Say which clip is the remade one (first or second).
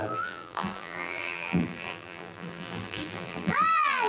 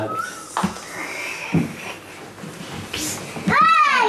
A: first